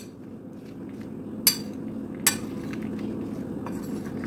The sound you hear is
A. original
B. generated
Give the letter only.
A